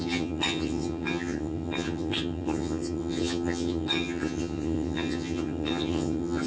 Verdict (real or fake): fake